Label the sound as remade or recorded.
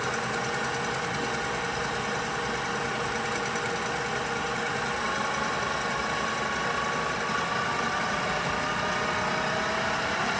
recorded